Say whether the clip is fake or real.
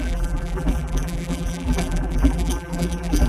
fake